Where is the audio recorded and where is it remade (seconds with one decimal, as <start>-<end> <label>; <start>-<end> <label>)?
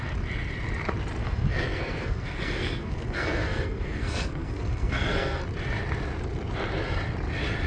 0.0-1.2 recorded; 1.2-5.4 remade; 5.4-7.7 recorded